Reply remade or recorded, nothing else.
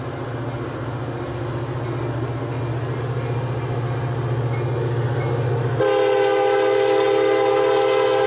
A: recorded